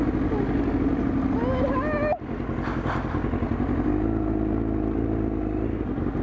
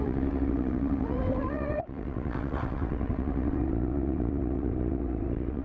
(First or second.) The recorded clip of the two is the first